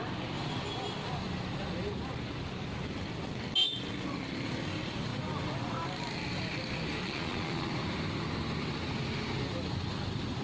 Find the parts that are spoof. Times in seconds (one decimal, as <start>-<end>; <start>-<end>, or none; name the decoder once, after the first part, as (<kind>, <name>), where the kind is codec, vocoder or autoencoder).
7.0-7.7 (vocoder, Vocos)